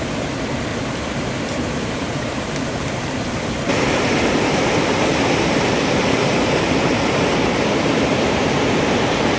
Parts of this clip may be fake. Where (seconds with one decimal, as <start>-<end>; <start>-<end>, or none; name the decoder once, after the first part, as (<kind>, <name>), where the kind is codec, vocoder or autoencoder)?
0.0-0.7 (vocoder, BigVGAN v2); 1.7-9.4